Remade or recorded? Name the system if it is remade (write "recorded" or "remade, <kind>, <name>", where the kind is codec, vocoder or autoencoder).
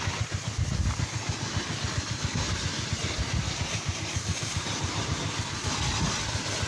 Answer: recorded